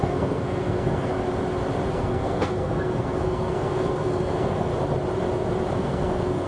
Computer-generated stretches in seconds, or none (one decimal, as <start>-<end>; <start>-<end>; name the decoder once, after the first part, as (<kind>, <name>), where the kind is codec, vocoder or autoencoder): 0.0-1.1 (codec, SNAC); 1.9-4.7; 5.8-6.5